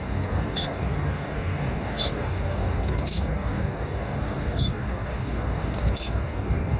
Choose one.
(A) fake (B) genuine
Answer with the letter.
A